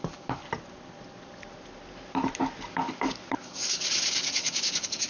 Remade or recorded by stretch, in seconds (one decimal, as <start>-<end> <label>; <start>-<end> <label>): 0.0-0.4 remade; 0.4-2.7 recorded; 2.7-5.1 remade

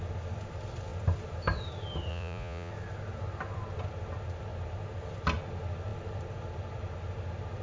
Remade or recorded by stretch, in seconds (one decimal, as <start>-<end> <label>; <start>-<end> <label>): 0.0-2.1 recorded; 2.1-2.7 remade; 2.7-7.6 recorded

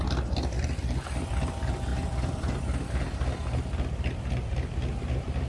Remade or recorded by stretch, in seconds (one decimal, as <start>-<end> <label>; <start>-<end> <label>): 0.0-5.5 recorded

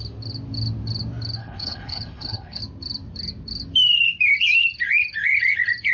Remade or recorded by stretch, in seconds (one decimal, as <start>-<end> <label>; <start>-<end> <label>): 0.0-1.4 recorded; 1.4-2.6 remade; 2.6-5.9 recorded

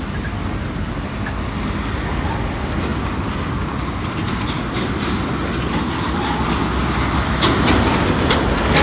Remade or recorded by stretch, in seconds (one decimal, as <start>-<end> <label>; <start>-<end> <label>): 0.0-8.8 recorded

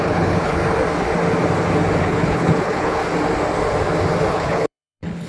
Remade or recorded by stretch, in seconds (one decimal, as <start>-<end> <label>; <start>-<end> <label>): 0.0-0.6 remade; 0.6-2.0 recorded; 2.0-3.0 remade; 3.0-4.3 recorded; 4.3-5.3 remade

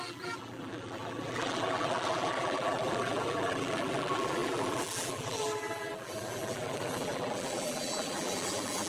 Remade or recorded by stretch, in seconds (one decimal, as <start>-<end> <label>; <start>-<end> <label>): 0.0-8.9 remade